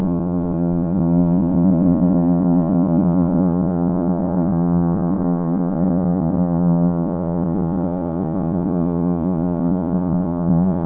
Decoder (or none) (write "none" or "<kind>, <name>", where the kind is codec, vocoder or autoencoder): vocoder, Vocos